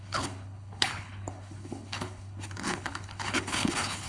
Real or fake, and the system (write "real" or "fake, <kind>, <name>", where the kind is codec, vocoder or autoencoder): fake, codec, HILCodec